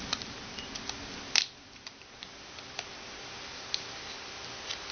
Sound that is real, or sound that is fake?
real